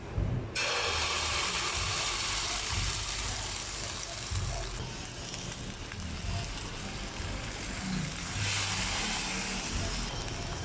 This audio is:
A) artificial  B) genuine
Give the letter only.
B